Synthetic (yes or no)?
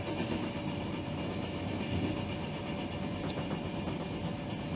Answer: no